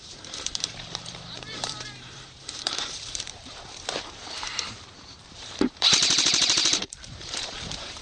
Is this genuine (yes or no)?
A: no